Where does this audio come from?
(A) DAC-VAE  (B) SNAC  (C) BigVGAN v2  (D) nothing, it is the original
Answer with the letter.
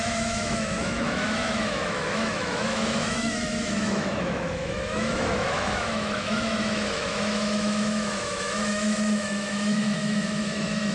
A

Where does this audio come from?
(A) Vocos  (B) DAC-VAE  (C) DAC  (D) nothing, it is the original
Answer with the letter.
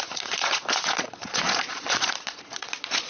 A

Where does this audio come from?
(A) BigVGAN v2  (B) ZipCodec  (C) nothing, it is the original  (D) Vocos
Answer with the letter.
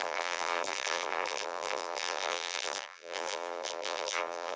A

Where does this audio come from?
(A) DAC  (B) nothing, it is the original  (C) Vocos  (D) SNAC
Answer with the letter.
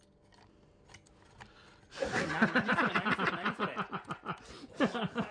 B